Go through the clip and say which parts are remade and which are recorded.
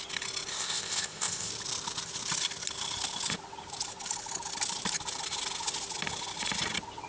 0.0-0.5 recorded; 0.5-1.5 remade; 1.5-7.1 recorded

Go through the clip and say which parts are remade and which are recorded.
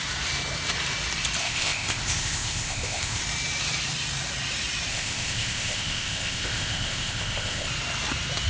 0.0-1.4 recorded; 1.4-3.2 remade; 3.2-4.9 recorded; 4.9-7.7 remade; 7.7-8.5 recorded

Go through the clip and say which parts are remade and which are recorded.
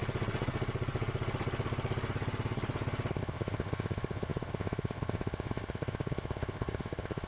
0.0-3.1 recorded; 3.1-7.3 remade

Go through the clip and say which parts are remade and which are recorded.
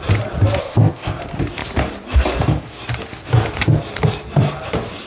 0.0-0.6 recorded; 0.6-1.2 remade; 1.2-5.1 recorded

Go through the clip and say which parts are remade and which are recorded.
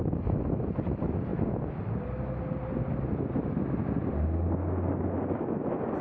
0.0-6.0 recorded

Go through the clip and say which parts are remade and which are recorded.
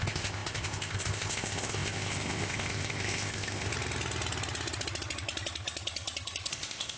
0.0-3.7 remade; 3.7-6.5 recorded; 6.5-7.0 remade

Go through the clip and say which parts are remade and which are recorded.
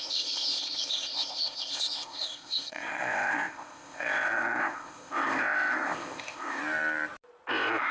0.0-6.6 remade; 6.6-7.5 recorded; 7.5-7.9 remade